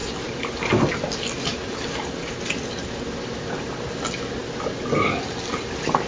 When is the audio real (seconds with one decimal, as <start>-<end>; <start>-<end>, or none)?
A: 0.0-6.1